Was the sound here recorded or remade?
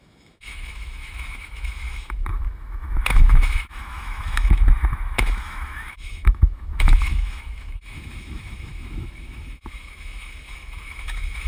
remade